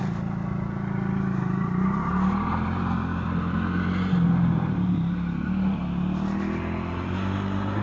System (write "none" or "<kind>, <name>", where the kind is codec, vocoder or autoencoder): none